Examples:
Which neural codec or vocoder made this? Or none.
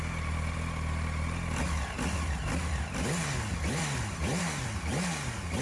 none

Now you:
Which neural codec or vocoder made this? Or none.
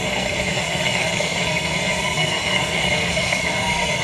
codec, SNAC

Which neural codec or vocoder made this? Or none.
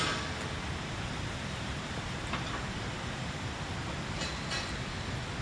none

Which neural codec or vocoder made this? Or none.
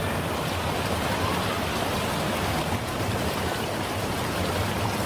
none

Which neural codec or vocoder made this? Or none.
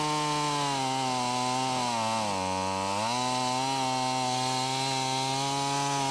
none